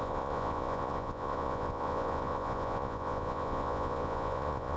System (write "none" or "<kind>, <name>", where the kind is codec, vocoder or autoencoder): vocoder, Vocos